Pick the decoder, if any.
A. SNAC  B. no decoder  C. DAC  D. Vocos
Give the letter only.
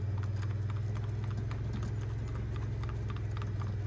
B